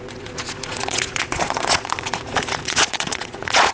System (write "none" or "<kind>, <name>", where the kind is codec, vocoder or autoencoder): vocoder, Vocos